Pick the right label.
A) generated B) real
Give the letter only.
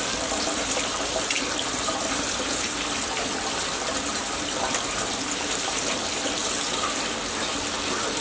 B